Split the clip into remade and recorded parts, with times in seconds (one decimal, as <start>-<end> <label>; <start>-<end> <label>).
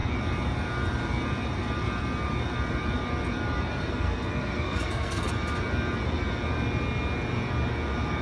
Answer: 0.0-3.9 recorded; 3.9-5.3 remade; 5.3-8.2 recorded